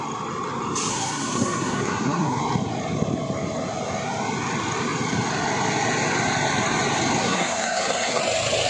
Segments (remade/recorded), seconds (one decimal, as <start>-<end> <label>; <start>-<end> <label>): 0.0-0.9 recorded; 0.9-2.4 remade; 2.4-7.2 recorded; 7.2-8.2 remade; 8.2-8.7 recorded